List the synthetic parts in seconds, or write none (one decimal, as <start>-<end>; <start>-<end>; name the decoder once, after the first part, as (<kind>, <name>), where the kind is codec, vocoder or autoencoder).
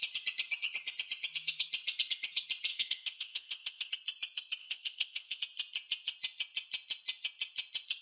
2.7-3.9 (codec, SNAC); 4.6-5.4